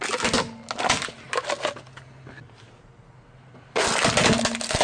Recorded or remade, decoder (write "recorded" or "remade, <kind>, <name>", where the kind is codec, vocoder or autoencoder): recorded